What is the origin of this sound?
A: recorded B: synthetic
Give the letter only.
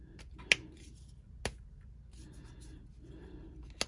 A